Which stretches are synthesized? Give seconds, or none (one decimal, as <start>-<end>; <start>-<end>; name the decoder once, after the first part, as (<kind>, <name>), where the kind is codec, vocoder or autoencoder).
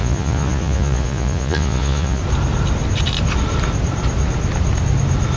0.0-2.2 (vocoder, Vocos)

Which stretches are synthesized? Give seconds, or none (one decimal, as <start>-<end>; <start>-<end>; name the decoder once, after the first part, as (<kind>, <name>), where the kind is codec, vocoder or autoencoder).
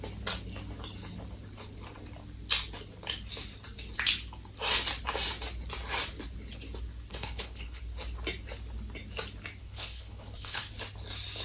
7.1-7.8 (codec, HILCodec); 9.6-10.7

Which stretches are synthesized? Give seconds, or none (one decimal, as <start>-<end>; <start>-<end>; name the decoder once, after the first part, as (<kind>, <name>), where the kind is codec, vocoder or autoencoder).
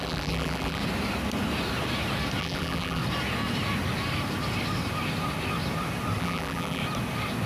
0.0-0.8 (vocoder, BigVGAN v2); 2.4-3.0; 6.2-6.8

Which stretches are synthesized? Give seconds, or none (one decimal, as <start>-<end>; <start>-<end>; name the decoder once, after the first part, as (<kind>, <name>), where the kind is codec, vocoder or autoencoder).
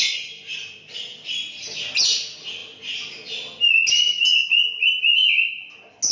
none